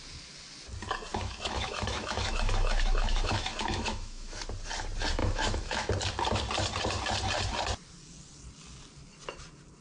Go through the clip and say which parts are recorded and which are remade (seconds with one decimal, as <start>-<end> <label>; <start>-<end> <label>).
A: 0.0-1.1 recorded; 1.1-4.4 remade; 4.4-5.2 recorded; 5.2-5.9 remade; 5.9-9.8 recorded